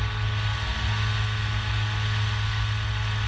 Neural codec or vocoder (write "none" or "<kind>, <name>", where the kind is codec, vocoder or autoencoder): none